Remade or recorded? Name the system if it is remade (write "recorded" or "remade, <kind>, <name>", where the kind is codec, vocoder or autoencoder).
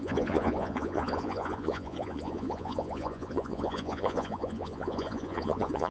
remade, vocoder, Vocos